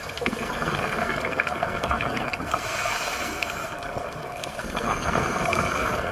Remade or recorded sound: remade